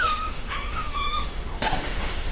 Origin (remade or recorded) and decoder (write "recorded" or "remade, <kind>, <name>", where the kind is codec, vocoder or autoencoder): remade, autoencoder, DAC-VAE